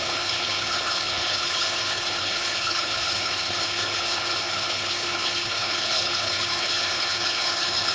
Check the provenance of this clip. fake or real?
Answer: fake